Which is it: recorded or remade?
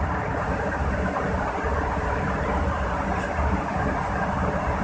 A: remade